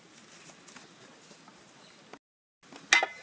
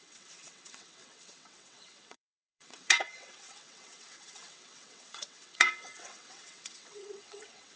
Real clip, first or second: first